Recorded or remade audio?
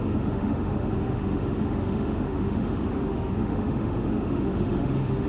remade